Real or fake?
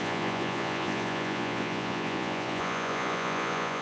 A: fake